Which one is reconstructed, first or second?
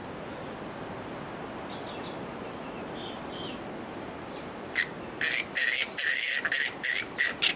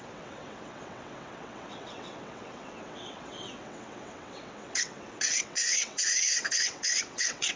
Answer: second